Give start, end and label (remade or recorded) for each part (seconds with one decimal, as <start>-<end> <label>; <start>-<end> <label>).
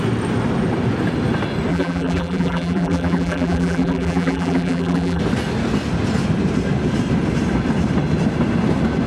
0.0-1.7 recorded; 1.7-5.2 remade; 5.2-9.1 recorded